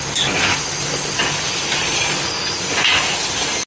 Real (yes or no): yes